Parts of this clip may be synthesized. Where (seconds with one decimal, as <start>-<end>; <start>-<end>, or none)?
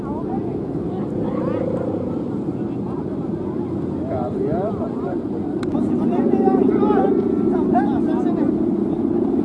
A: none